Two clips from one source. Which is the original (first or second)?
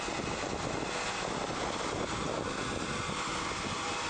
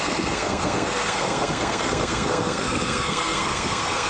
first